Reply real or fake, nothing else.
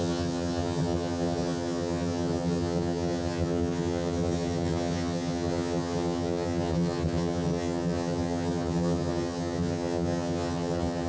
fake